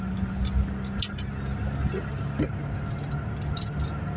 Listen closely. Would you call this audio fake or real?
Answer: real